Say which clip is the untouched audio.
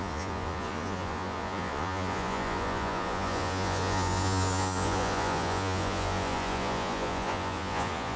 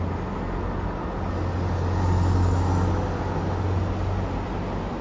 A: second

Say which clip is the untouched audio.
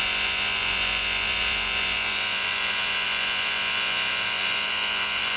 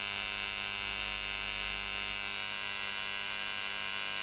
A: second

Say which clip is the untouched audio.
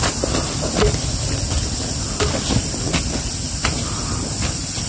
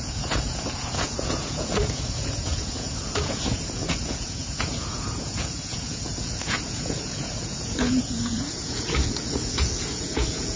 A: first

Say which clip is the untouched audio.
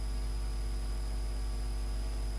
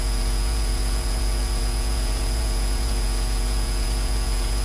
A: first